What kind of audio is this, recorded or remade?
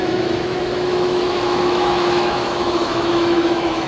remade